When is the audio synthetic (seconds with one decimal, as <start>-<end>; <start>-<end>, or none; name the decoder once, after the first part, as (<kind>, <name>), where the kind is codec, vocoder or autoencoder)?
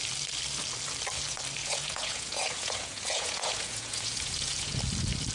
1.6-4.8 (vocoder, Vocos)